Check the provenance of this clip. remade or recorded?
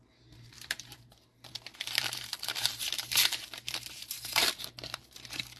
remade